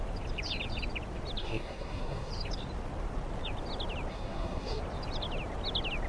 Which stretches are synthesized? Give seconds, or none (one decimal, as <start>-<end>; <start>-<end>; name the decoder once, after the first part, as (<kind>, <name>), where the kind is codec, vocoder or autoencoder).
1.4-2.3 (codec, SNAC); 4.1-4.8